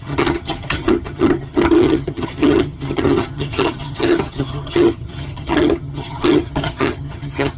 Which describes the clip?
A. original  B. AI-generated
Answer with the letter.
B